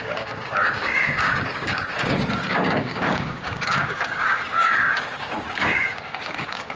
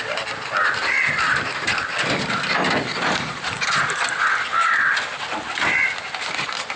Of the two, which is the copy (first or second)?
first